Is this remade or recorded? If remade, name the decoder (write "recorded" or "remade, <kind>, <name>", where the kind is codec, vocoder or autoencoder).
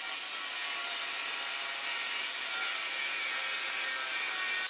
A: recorded